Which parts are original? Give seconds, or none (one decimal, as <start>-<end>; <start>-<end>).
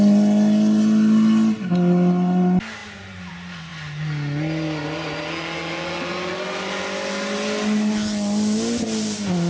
0.0-2.8; 3.3-9.5